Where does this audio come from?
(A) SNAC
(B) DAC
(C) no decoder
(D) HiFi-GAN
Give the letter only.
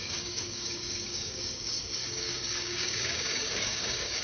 B